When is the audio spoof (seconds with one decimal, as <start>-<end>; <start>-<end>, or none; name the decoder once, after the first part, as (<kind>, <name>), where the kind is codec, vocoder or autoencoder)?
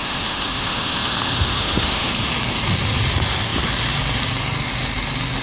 0.0-2.1 (autoencoder, DAC-VAE)